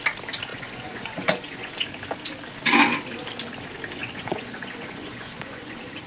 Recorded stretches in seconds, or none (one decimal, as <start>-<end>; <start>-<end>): 0.0-0.5; 1.7-4.0